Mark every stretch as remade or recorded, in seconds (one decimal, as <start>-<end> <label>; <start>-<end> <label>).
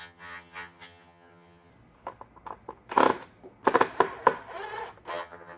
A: 0.0-1.7 remade; 1.7-5.1 recorded; 5.1-5.6 remade